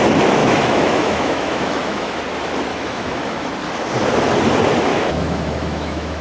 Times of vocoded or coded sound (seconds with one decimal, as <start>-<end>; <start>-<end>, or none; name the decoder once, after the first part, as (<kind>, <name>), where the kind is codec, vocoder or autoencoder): 0.4-2.2 (autoencoder, DAC-VAE); 2.7-3.5; 4.9-6.2